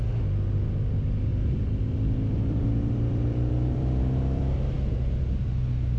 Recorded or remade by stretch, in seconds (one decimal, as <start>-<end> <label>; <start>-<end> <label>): 0.0-1.3 recorded; 1.3-4.7 remade; 4.7-6.0 recorded